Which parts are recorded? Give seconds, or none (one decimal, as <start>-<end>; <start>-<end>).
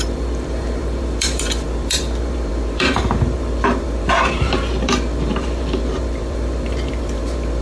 none